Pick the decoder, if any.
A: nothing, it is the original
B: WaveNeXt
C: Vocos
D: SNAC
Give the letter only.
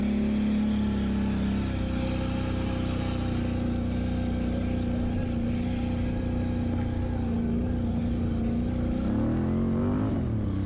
A